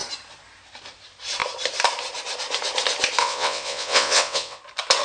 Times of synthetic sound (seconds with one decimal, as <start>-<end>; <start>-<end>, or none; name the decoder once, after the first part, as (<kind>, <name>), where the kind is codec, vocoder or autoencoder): 3.2-4.6 (vocoder, WaveNeXt)